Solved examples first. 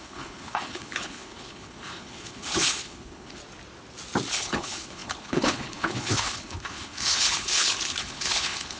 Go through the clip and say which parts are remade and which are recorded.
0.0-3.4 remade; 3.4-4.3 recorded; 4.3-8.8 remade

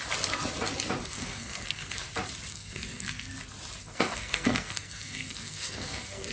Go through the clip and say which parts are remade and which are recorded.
0.0-1.0 recorded; 1.0-2.1 remade; 2.1-2.5 recorded; 2.5-3.3 remade; 3.3-3.8 recorded; 3.8-6.3 remade